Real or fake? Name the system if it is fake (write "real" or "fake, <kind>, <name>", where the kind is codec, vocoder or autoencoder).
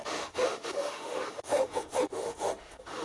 fake, autoencoder, DAC-VAE